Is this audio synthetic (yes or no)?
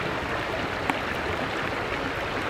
no